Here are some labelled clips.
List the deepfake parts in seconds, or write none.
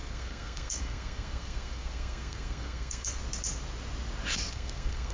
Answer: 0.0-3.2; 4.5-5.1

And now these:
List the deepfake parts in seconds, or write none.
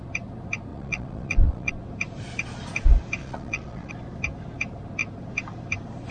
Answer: 0.7-1.7; 3.2-3.9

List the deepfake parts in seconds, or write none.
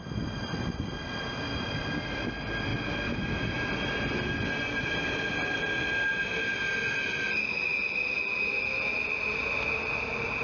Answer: none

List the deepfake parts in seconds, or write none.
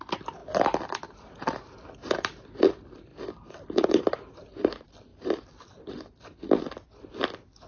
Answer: none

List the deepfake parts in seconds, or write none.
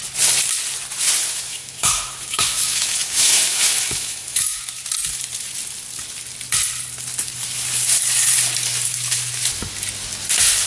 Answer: 1.2-4.6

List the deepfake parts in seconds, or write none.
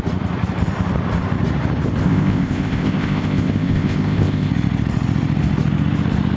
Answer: 2.0-4.5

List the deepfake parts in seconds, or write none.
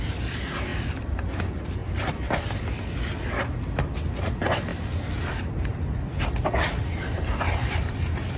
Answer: none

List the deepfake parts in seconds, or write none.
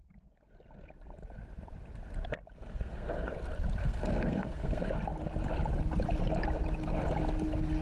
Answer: 2.6-3.2; 3.8-4.9